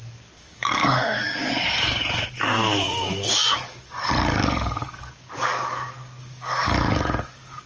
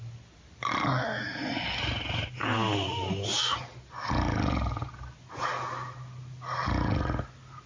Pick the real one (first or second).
second